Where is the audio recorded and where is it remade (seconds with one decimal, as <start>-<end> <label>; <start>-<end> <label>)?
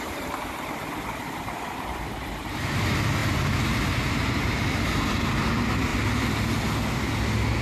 0.0-5.9 remade; 5.9-7.6 recorded